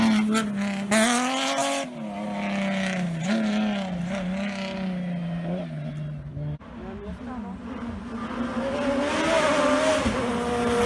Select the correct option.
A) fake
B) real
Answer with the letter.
B